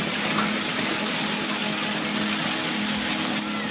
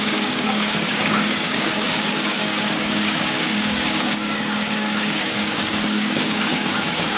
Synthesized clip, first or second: second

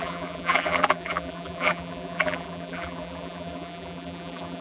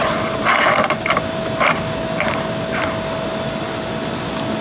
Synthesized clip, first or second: first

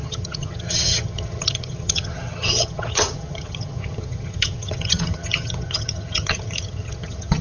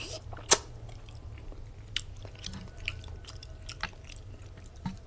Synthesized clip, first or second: first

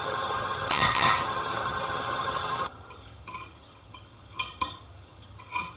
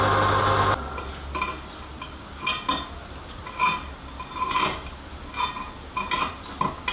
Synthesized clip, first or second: first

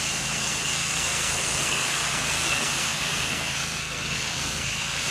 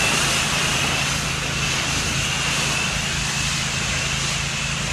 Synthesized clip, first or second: first